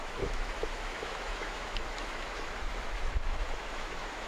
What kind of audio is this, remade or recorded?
remade